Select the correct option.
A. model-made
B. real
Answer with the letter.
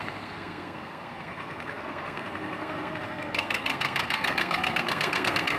A